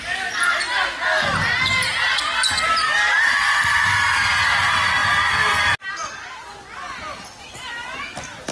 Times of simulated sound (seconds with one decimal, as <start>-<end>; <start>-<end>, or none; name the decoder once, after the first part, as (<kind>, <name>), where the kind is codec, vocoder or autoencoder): none